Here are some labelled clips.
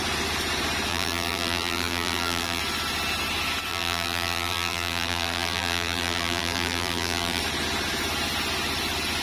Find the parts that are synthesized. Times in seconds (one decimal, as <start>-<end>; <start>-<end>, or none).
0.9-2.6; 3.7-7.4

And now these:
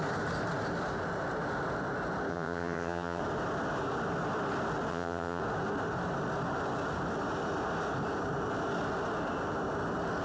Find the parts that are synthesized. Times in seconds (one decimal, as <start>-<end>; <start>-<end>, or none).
2.3-3.2; 4.9-5.4

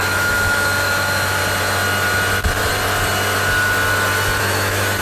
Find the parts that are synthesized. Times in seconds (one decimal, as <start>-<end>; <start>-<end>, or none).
0.0-1.4; 4.4-5.0

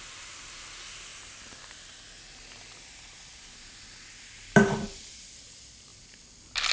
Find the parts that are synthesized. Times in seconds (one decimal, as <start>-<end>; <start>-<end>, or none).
none

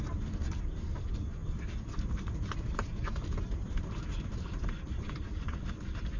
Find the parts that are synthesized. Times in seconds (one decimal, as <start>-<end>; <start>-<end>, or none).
1.4-4.6

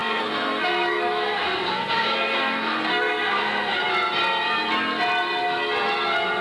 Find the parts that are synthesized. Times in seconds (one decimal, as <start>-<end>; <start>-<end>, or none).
0.0-3.8

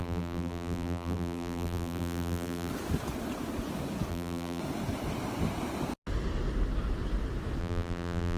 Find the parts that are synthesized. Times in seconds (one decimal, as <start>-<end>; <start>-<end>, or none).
0.0-2.7; 4.1-4.6; 7.6-8.4

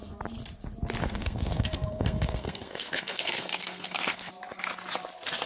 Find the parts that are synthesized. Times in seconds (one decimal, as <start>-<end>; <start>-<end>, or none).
1.0-4.3